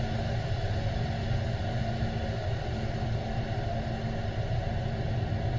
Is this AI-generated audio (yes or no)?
no